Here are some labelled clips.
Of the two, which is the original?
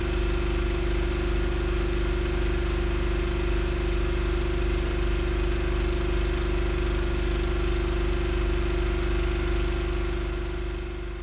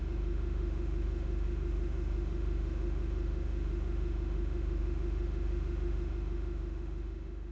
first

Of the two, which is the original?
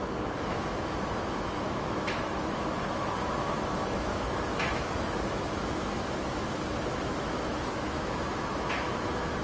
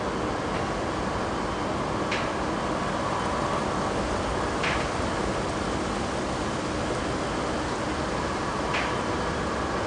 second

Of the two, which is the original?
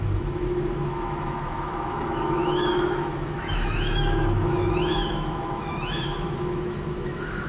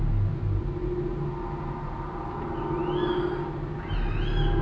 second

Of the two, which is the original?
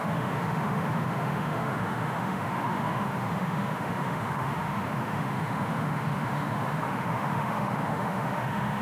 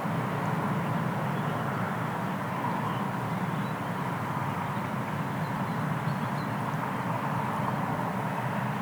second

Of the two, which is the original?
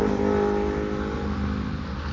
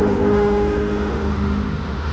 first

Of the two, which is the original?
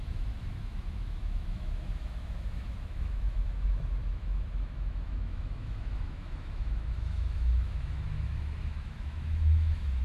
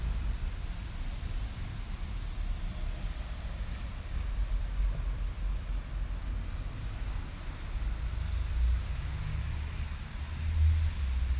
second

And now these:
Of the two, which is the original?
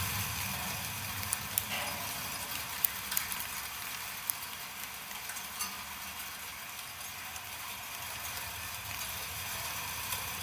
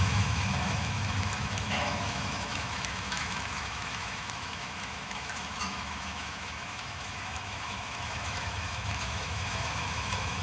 first